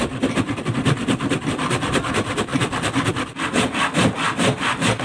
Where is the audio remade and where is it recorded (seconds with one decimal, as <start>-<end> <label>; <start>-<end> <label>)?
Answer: 0.0-5.0 recorded